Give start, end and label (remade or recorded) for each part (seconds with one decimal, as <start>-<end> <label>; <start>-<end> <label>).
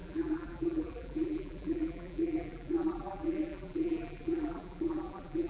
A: 0.0-5.5 remade